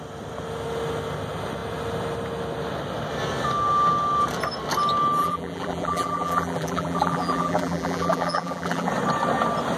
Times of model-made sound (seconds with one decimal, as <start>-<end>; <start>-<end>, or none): 5.2-8.9